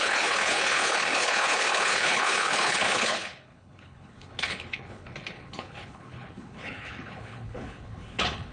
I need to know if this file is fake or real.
fake